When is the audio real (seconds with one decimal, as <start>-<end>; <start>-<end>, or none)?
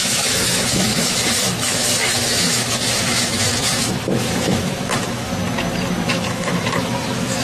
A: 5.3-6.1